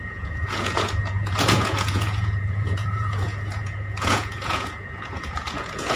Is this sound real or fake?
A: fake